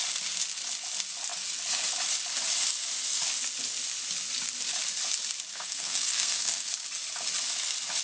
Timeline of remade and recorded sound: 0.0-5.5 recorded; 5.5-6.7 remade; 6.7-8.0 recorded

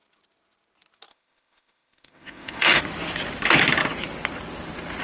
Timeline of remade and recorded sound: 0.0-1.1 recorded; 1.1-2.8 remade; 2.8-5.0 recorded

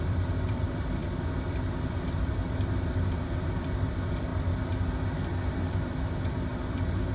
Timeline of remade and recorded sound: 0.0-4.3 remade; 4.3-5.4 recorded; 5.4-7.1 remade

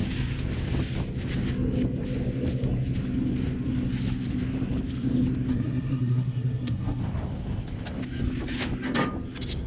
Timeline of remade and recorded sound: 0.0-5.5 recorded; 5.5-7.0 remade; 7.0-9.7 recorded

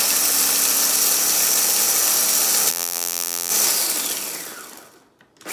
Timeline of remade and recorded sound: 0.0-2.7 recorded; 2.7-3.5 remade; 3.5-5.5 recorded

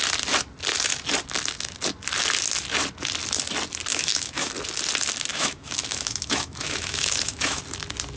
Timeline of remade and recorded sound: 0.0-3.9 recorded; 3.9-4.5 remade; 4.5-5.3 recorded; 5.3-7.6 remade; 7.6-8.2 recorded

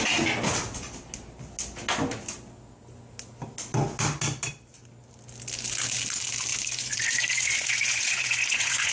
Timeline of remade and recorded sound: 0.0-6.5 recorded; 6.5-8.9 remade